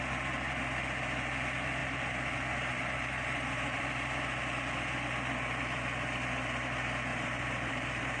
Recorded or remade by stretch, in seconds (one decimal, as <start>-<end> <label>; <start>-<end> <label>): 0.0-1.8 recorded; 1.8-4.3 remade; 4.3-7.1 recorded; 7.1-8.2 remade